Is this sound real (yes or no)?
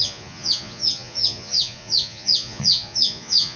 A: no